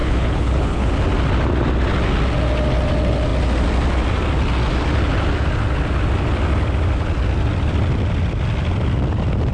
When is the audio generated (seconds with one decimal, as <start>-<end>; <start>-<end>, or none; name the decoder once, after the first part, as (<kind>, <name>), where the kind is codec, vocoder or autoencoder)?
0.0-0.9 (codec, HILCodec)